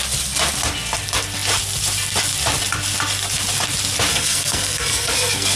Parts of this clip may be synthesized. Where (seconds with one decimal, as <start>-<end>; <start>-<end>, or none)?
4.1-5.6